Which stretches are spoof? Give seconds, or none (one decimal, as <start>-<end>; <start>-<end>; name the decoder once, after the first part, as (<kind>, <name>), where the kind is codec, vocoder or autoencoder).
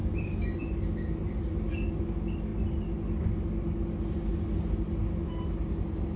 none